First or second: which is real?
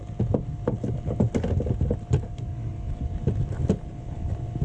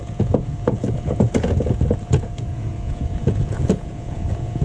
first